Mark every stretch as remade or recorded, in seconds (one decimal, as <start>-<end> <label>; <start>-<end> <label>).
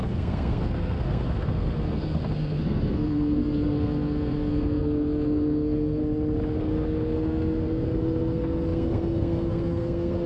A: 0.0-6.0 remade; 6.0-6.6 recorded; 6.6-10.3 remade